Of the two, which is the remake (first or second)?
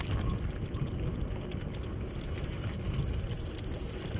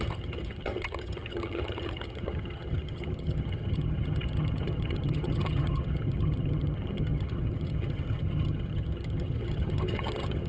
second